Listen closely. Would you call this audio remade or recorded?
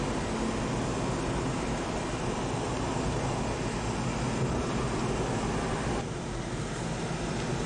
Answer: recorded